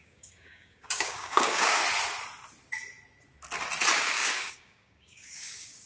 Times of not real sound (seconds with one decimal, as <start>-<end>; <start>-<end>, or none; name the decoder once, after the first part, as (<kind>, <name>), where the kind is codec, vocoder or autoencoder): 0.0-1.8 (codec, DAC); 3.9-5.9